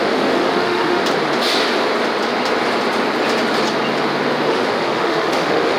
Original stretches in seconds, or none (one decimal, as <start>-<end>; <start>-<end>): 1.0-4.5